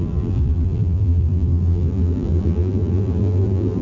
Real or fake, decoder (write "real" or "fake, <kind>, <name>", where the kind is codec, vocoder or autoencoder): fake, vocoder, BigVGAN v2